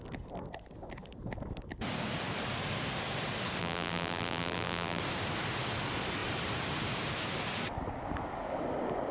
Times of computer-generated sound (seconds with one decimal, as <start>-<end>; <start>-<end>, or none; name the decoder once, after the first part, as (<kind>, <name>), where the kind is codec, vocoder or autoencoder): 3.6-5.0 (vocoder, BigVGAN v2)